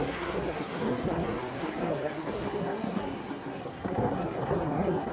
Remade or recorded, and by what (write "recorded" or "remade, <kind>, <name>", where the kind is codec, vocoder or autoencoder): remade, codec, SNAC